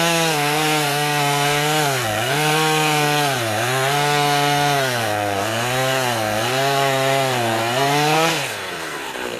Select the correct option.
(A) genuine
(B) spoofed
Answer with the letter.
B